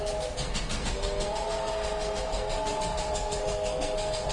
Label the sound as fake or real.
fake